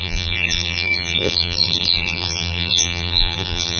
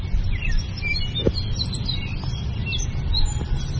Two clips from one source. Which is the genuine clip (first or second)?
second